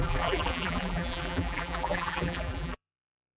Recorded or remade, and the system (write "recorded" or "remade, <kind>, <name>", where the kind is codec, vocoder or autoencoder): remade, vocoder, BigVGAN v2